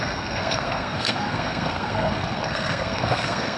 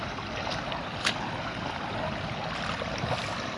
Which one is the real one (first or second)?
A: second